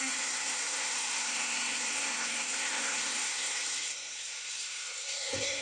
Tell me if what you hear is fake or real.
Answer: fake